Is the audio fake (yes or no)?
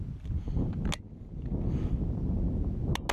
no